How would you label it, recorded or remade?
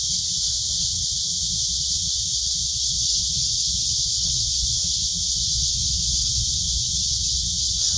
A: remade